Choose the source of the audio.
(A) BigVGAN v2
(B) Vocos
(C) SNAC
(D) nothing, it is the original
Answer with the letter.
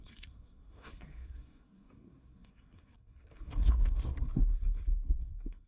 C